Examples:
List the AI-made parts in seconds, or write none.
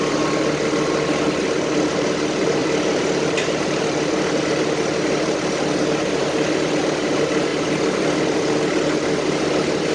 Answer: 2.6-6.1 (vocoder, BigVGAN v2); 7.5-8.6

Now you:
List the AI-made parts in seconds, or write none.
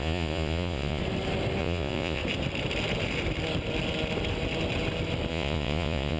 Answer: 0.0-1.0 (vocoder, Vocos); 1.6-2.2; 5.3-6.2